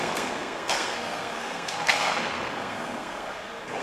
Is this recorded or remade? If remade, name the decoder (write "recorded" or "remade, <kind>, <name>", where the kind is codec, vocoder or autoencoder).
remade, codec, SNAC